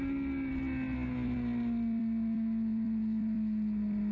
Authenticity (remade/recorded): recorded